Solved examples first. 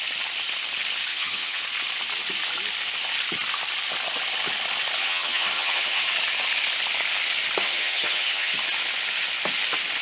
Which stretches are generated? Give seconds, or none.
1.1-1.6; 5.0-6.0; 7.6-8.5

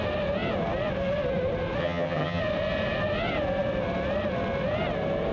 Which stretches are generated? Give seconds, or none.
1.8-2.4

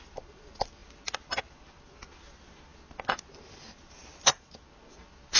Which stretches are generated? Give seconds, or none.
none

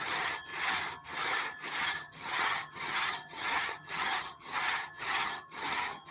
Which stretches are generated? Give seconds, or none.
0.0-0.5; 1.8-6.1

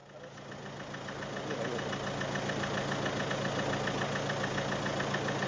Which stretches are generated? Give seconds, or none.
none

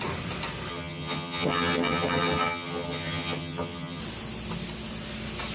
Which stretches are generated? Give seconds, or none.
0.7-4.0